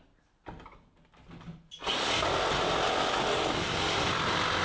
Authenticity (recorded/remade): recorded